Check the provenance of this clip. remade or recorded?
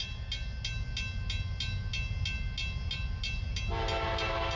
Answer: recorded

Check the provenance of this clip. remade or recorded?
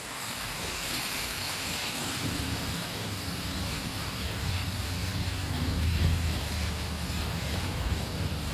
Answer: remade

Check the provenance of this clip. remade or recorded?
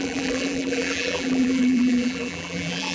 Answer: remade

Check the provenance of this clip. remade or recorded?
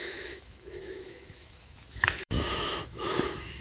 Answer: remade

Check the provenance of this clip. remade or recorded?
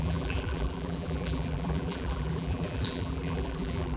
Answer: remade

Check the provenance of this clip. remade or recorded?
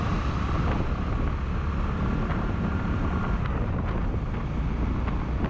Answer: recorded